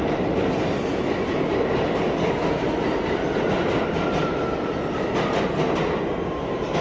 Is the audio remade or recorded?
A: recorded